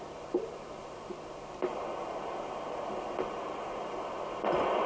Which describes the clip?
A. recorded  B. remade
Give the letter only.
A